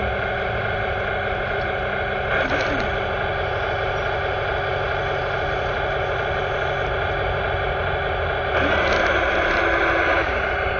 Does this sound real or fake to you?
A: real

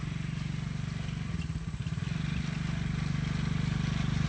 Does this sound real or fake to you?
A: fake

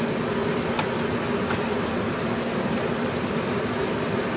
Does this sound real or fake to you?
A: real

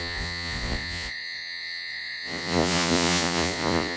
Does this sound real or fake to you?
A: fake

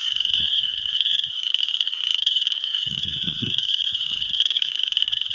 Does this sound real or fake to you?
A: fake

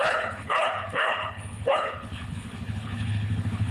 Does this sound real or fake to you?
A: fake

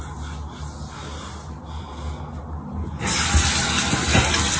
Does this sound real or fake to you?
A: real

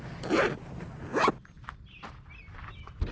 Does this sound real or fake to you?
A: real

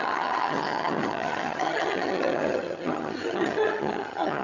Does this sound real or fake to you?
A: fake